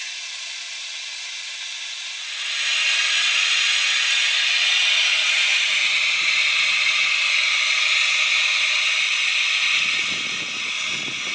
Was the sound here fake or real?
real